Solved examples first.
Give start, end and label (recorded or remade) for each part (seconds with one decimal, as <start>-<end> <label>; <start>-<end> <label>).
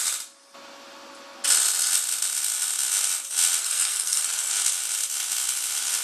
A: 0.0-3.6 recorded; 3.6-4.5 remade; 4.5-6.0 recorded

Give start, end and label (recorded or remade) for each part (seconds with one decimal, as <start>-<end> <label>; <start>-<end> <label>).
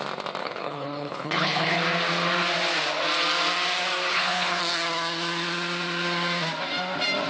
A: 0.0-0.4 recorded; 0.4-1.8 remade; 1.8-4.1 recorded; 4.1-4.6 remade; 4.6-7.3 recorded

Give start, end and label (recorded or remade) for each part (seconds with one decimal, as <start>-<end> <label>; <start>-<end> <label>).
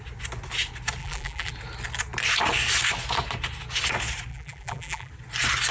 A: 0.0-1.0 recorded; 1.0-1.5 remade; 1.5-4.3 recorded; 4.3-5.1 remade; 5.1-5.7 recorded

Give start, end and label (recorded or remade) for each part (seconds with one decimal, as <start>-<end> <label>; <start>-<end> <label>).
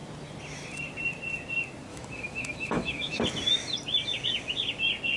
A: 0.0-1.9 recorded; 1.9-3.2 remade; 3.2-5.2 recorded